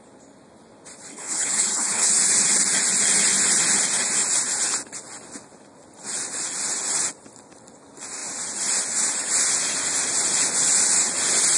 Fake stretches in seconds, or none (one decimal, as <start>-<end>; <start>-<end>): 1.1-2.1